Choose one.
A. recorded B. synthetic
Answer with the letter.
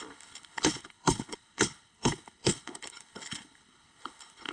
B